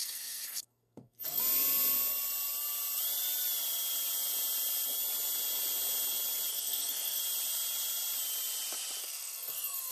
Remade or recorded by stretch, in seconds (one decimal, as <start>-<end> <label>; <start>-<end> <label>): 0.0-1.4 remade; 1.4-6.5 recorded; 6.5-7.2 remade; 7.2-9.0 recorded; 9.0-9.9 remade